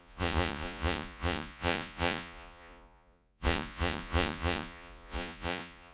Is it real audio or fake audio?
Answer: fake